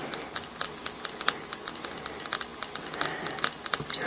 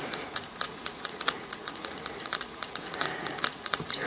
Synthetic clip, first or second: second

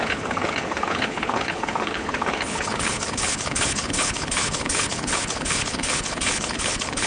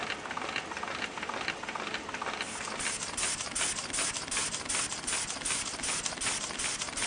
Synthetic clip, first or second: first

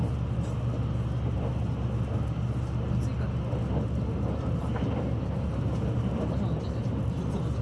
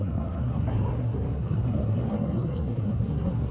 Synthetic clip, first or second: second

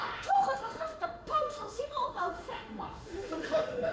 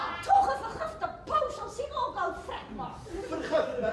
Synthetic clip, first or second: first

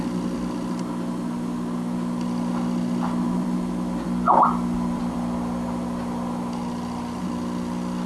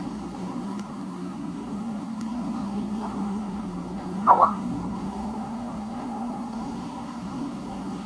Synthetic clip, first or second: second